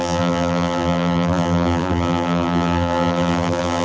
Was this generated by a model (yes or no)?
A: yes